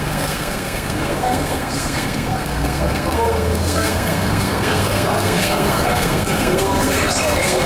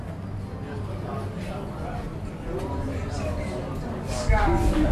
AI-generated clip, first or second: first